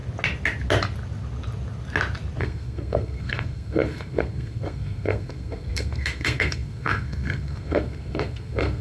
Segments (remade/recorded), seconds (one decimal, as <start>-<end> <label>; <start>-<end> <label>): 0.0-2.4 recorded; 2.4-8.8 remade